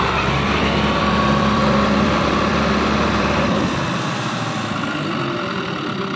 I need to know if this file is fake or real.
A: fake